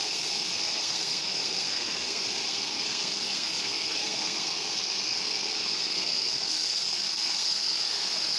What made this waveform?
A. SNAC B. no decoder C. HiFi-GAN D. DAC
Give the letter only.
A